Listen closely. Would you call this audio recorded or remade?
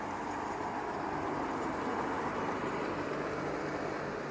recorded